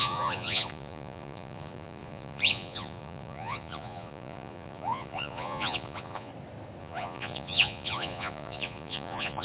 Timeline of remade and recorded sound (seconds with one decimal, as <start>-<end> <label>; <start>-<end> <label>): 0.0-6.3 remade; 6.3-6.8 recorded; 6.8-9.4 remade